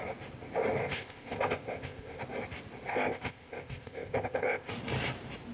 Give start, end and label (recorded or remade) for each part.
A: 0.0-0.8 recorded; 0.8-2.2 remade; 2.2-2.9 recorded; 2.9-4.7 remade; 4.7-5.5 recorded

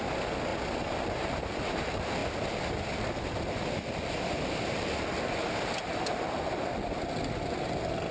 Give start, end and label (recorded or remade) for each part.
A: 0.0-8.1 recorded

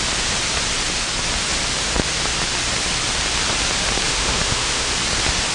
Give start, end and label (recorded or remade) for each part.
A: 0.0-4.1 recorded; 4.1-4.9 remade; 4.9-5.5 recorded

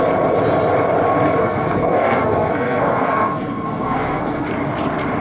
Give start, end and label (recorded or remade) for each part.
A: 0.0-1.4 recorded; 1.4-4.5 remade; 4.5-5.2 recorded

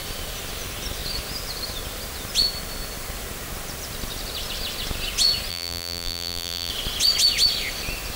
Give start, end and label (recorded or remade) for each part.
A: 0.0-5.5 recorded; 5.5-6.7 remade; 6.7-8.2 recorded

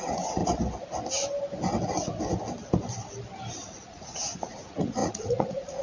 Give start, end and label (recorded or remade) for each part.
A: 0.0-0.4 remade; 0.4-3.9 recorded; 3.9-5.8 remade

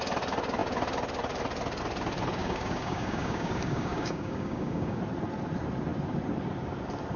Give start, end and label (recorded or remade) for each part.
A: 0.0-2.4 recorded; 2.4-5.0 remade; 5.0-7.2 recorded

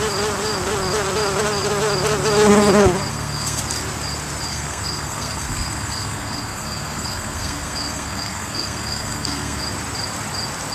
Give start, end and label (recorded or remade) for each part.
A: 0.0-3.1 recorded; 3.1-3.6 remade; 3.6-4.5 recorded; 4.5-9.6 remade; 9.6-10.7 recorded